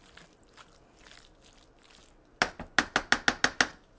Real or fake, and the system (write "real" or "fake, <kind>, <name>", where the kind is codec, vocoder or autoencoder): real